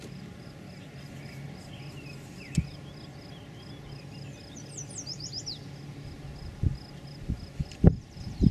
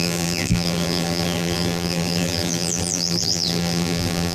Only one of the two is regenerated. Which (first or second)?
second